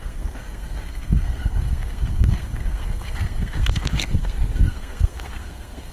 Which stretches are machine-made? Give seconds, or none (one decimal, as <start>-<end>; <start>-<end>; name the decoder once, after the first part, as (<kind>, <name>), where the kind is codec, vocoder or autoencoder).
0.0-5.9 (codec, SNAC)